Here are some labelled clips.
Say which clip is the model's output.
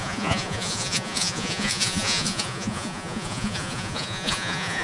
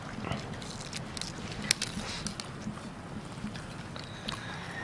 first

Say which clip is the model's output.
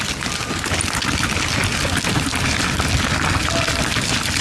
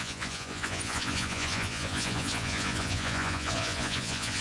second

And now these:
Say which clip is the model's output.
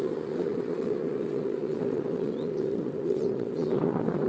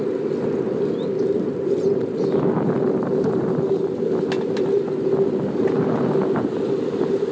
first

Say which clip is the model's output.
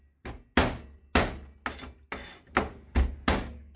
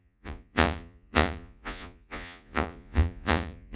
second